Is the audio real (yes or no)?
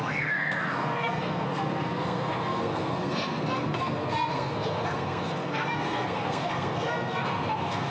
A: no